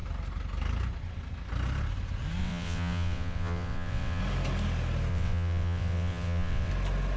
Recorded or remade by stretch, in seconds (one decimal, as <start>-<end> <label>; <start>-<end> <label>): 0.0-2.4 recorded; 2.4-4.2 remade; 4.2-5.1 recorded; 5.1-6.7 remade; 6.7-7.2 recorded